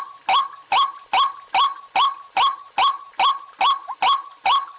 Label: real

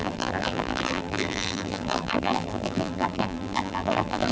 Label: fake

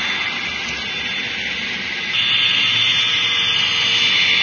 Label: real